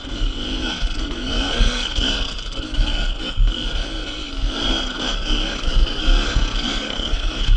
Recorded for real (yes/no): no